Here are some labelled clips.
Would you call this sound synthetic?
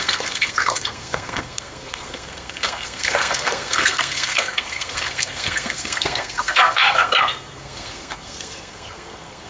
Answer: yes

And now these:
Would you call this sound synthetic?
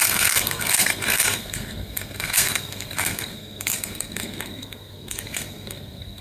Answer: yes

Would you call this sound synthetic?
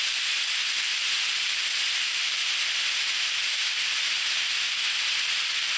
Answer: no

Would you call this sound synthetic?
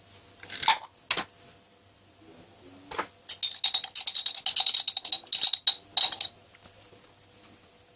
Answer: no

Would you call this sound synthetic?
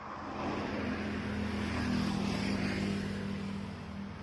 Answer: no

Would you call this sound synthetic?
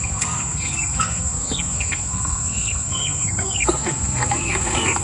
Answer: yes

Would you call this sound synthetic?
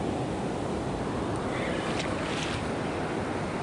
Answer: no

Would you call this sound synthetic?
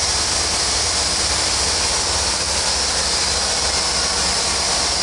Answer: no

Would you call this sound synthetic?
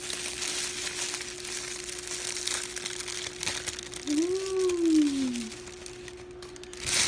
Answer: no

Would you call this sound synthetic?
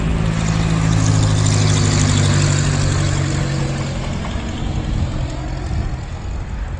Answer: no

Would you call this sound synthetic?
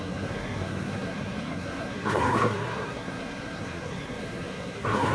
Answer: yes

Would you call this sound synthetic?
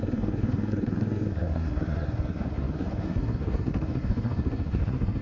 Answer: yes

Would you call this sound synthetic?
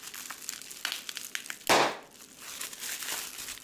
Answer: no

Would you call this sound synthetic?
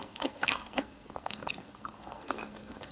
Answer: yes